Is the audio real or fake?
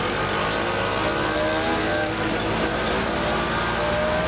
real